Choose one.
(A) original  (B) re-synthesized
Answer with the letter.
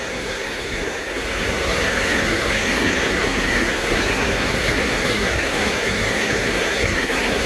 B